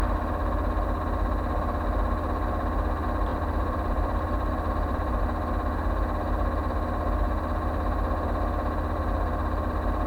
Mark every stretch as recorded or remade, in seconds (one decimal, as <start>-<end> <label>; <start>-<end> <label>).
0.0-3.3 recorded; 3.3-5.2 remade; 5.2-10.1 recorded